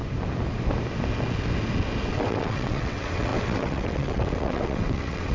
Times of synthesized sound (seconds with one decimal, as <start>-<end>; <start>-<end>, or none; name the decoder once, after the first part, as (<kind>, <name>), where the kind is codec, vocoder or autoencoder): 2.1-5.3 (vocoder, WaveNeXt)